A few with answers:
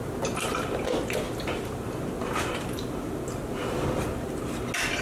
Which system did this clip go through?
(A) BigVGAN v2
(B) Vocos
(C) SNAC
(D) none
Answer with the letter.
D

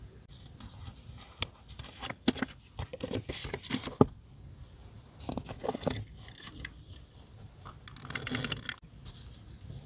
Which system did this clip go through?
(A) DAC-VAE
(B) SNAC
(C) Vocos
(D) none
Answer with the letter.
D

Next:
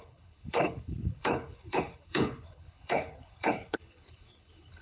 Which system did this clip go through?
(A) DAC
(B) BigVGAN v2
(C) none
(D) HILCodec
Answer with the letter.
D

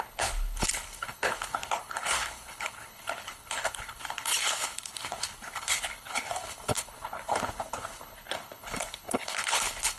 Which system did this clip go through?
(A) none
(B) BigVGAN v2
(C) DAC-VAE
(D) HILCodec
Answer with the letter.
D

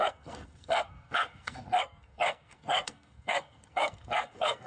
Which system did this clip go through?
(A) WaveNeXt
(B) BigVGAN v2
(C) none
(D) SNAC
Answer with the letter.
D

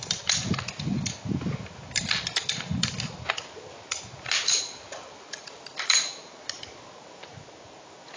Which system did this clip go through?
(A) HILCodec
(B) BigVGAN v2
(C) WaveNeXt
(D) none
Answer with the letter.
D